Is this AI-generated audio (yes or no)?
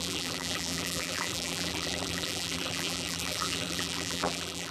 yes